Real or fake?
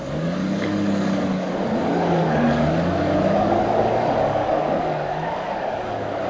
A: fake